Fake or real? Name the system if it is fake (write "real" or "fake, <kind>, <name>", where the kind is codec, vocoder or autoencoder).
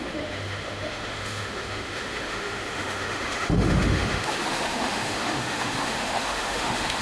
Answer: fake, autoencoder, DAC-VAE